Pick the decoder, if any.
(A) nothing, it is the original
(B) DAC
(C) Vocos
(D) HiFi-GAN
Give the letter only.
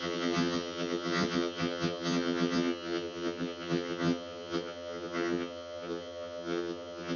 D